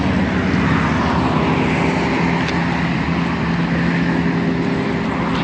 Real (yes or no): yes